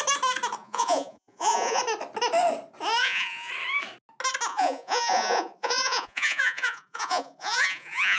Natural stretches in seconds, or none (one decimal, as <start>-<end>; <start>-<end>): 0.0-0.6; 1.8-3.0; 3.5-4.5